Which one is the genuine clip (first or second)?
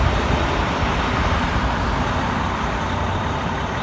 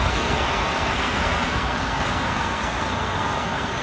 first